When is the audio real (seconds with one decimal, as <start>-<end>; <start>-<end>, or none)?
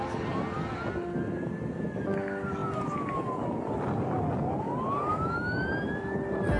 0.0-5.1; 5.7-6.6